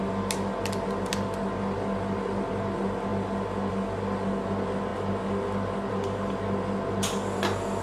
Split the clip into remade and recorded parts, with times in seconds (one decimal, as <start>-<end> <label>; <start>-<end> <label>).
0.0-7.8 recorded